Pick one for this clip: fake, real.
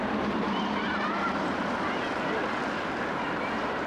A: fake